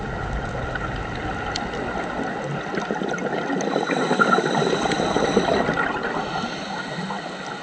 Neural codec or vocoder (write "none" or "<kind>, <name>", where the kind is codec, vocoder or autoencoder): none